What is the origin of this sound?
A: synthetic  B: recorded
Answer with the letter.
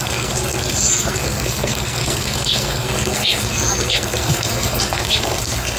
A